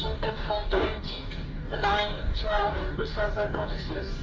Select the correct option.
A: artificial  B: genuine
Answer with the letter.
A